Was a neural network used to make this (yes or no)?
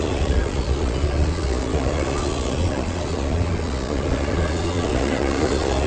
yes